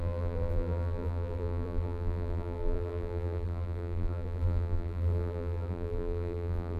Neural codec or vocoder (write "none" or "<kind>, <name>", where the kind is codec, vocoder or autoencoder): vocoder, BigVGAN v2